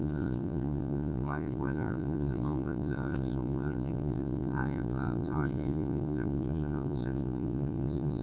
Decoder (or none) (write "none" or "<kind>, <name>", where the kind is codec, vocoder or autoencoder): vocoder, Vocos